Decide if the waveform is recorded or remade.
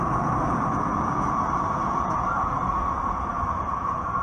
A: remade